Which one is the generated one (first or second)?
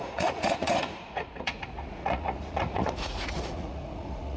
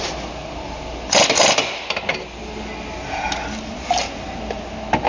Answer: first